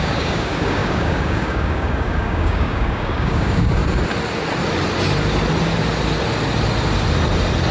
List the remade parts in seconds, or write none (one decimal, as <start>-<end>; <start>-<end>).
0.0-3.8